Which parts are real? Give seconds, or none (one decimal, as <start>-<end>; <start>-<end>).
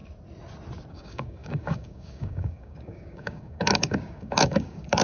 0.0-0.9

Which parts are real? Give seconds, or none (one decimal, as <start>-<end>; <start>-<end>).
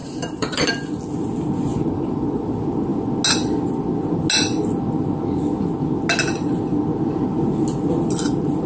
0.7-1.7; 2.5-8.7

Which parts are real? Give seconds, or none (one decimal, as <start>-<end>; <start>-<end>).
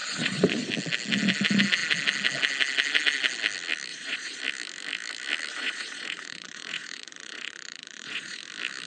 0.7-3.9; 4.4-5.5; 8.4-8.9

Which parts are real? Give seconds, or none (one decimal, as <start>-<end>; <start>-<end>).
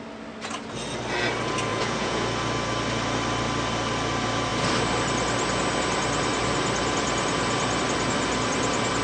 0.0-1.7; 2.2-9.0